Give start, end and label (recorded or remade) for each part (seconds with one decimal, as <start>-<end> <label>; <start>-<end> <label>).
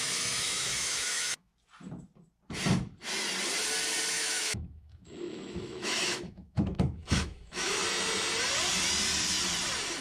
0.0-1.5 remade; 1.5-4.1 recorded; 4.1-7.8 remade; 7.8-10.0 recorded